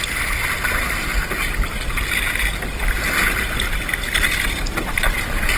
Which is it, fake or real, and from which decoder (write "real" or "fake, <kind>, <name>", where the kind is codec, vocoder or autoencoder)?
real